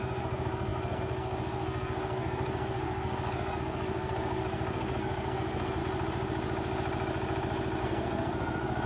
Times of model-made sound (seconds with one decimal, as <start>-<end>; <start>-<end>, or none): 0.0-5.8; 7.8-8.9